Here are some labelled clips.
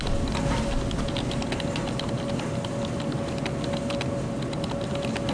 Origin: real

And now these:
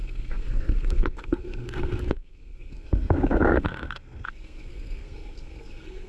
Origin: fake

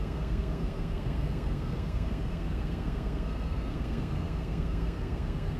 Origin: fake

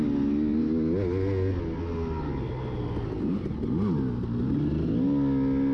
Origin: real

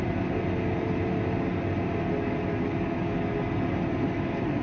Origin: real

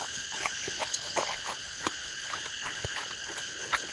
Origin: fake